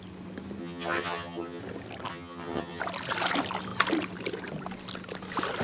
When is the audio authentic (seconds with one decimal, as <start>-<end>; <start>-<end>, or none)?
0.0-0.6; 1.6-2.1; 2.8-5.6